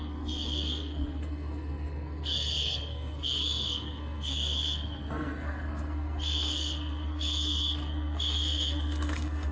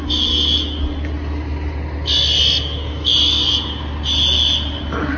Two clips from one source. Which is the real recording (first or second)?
second